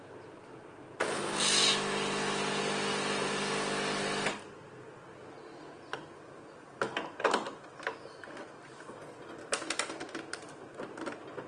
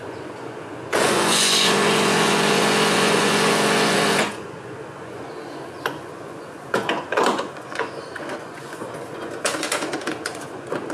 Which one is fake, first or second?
second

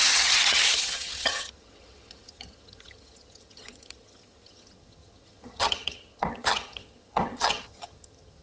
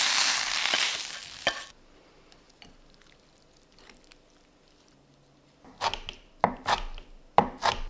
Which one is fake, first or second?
first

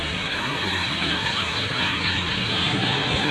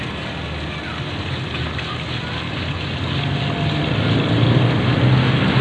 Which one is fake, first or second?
first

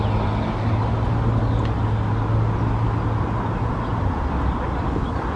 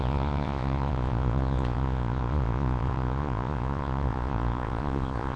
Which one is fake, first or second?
second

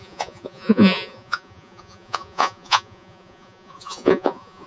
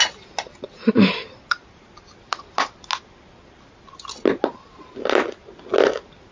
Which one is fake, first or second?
first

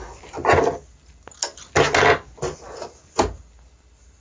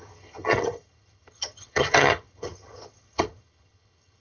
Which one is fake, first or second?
second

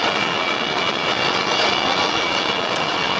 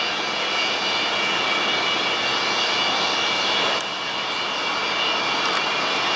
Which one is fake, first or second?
first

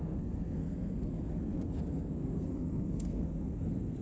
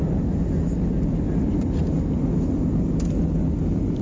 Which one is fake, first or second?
first